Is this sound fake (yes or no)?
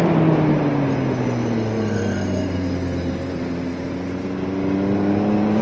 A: no